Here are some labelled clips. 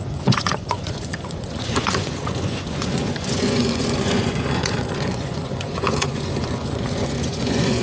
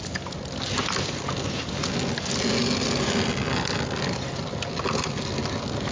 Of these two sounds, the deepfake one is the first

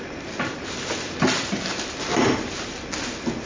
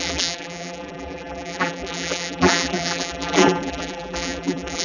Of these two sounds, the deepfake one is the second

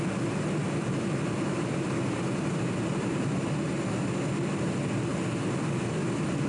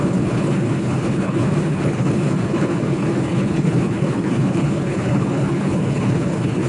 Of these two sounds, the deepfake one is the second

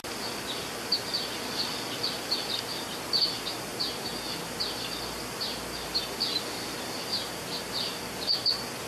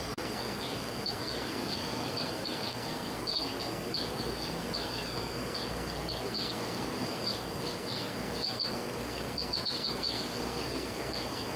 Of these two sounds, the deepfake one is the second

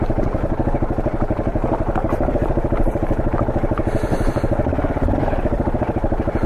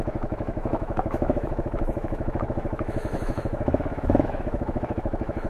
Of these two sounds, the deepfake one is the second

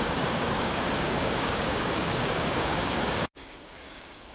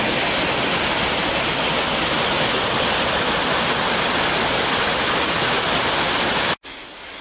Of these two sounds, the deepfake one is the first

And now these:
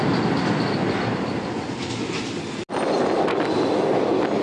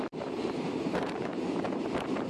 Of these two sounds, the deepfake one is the second